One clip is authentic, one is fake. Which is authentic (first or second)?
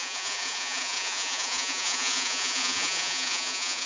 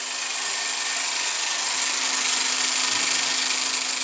second